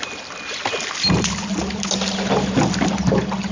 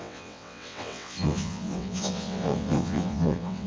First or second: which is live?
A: first